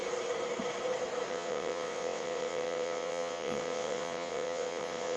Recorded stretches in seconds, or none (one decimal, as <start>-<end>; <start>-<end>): 0.0-1.3

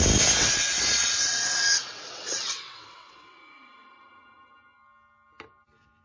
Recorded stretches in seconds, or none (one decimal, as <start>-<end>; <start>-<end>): 0.0-0.4; 3.4-6.0

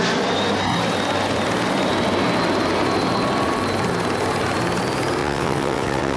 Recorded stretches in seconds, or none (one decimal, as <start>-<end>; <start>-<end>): 0.0-5.2

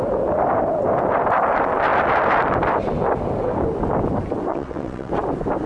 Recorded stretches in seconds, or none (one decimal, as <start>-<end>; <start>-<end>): 0.0-4.5; 5.1-5.7

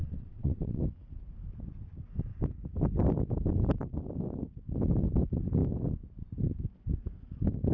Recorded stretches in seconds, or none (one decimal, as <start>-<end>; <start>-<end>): 0.8-7.7

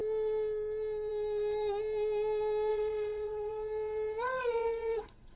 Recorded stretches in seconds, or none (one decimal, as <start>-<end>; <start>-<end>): 0.0-2.7

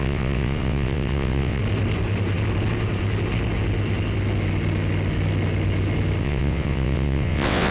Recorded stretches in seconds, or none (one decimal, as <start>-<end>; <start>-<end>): 1.6-6.2

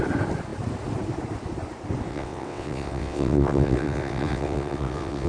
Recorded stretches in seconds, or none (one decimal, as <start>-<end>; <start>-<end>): 0.0-2.1